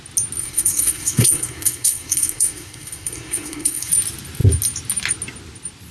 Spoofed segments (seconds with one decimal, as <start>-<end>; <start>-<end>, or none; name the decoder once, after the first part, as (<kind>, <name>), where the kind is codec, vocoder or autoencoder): 0.4-3.9 (codec, SNAC)